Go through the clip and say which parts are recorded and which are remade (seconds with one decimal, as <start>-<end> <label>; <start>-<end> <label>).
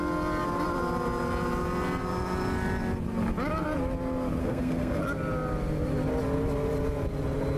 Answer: 0.0-4.4 recorded; 4.4-5.0 remade; 5.0-7.6 recorded